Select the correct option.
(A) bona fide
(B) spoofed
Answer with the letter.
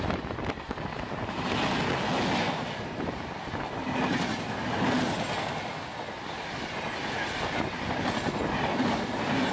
A